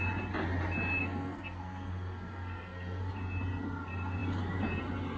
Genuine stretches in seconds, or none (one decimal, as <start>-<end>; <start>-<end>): 0.0-1.0; 3.1-5.2